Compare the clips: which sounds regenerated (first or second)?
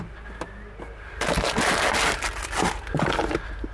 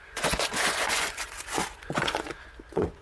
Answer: second